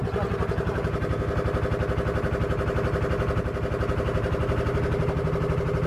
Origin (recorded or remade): recorded